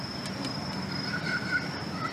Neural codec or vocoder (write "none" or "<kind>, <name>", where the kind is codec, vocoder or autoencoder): none